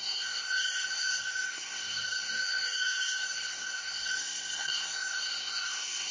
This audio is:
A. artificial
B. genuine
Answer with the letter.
A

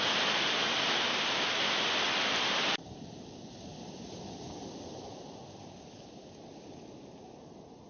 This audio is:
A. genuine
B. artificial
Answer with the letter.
A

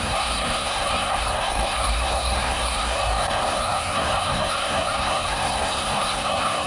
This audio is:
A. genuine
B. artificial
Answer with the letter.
B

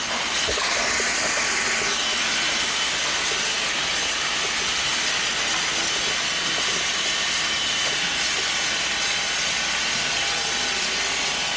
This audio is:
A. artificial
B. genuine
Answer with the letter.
B